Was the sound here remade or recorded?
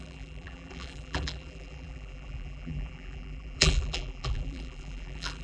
remade